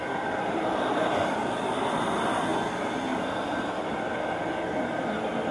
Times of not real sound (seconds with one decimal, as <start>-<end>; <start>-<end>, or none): none